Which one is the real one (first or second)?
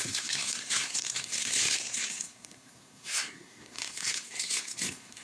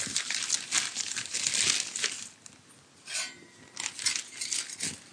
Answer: second